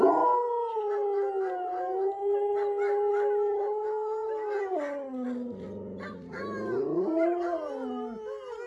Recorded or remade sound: recorded